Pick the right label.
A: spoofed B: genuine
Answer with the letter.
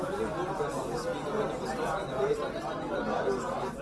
B